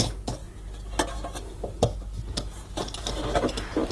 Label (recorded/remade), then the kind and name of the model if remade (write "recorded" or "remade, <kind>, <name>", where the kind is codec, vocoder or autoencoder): recorded